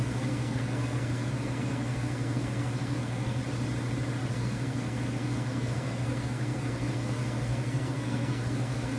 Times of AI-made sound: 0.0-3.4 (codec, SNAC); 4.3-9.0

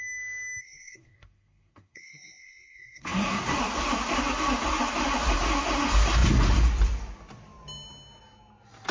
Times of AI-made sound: 0.6-3.6 (codec, SNAC)

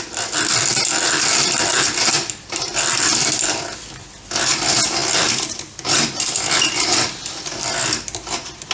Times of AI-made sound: none